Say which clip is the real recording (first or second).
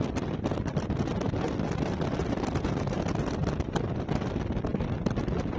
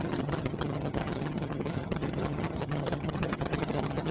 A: first